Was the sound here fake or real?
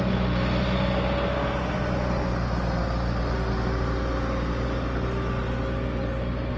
real